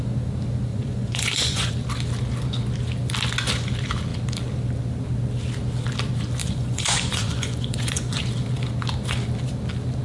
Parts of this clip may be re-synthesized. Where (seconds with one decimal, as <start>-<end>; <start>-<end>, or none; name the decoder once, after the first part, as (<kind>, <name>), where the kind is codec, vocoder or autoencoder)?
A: 0.7-1.7 (vocoder, Vocos); 6.4-8.2